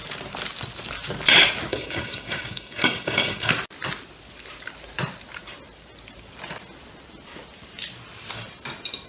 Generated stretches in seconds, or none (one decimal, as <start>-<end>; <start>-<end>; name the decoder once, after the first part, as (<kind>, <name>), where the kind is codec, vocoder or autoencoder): 1.7-3.5 (codec, DAC)